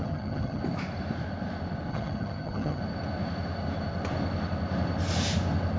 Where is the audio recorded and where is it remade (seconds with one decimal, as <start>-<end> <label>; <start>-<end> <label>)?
0.0-0.6 remade; 0.6-1.9 recorded; 1.9-2.8 remade; 2.8-5.8 recorded